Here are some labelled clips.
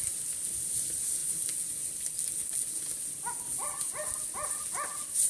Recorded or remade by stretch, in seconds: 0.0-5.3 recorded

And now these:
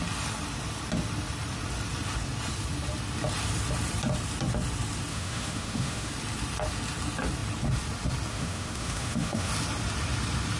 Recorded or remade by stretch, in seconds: 0.0-5.1 recorded; 5.1-6.1 remade; 6.1-8.3 recorded; 8.3-9.5 remade; 9.5-10.6 recorded

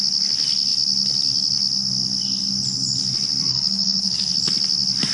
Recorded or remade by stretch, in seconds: 0.0-3.5 recorded; 3.5-4.3 remade; 4.3-5.1 recorded

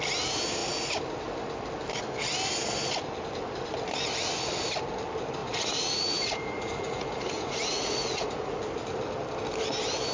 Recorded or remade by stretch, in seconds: 0.0-5.4 recorded; 5.4-8.6 remade; 8.6-10.1 recorded

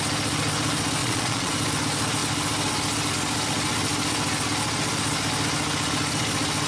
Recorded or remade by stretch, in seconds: 0.0-1.0 recorded; 1.0-1.5 remade; 1.5-6.7 recorded

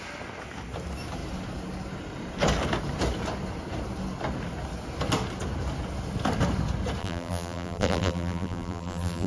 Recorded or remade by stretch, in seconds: 0.0-7.0 recorded; 7.0-9.3 remade